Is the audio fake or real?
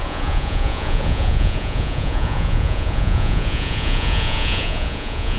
fake